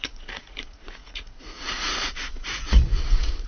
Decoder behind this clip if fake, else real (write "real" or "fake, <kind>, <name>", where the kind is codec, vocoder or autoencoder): fake, vocoder, Vocos